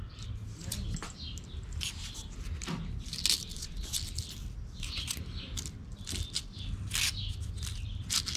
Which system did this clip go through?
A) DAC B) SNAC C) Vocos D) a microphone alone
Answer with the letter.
D